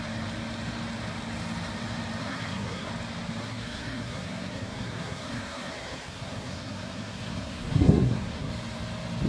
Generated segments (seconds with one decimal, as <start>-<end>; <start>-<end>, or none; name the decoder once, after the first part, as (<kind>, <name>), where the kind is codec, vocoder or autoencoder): 2.2-2.9 (codec, SNAC); 3.4-8.5